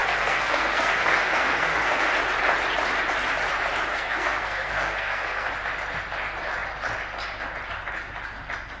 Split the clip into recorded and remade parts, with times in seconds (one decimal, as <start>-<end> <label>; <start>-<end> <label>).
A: 0.0-2.1 remade; 2.1-3.9 recorded; 3.9-5.5 remade; 5.5-8.8 recorded